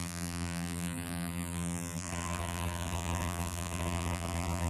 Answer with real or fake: fake